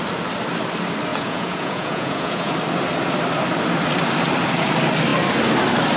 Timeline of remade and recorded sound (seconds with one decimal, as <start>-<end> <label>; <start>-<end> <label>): 0.0-1.1 recorded; 1.1-2.5 remade; 2.5-6.0 recorded